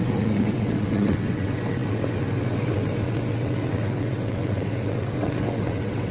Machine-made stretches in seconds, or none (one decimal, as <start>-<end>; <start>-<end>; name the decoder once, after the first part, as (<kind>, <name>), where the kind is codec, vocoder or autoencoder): 0.0-6.1 (vocoder, WaveNeXt)